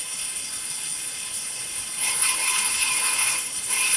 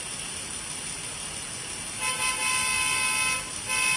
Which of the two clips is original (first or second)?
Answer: second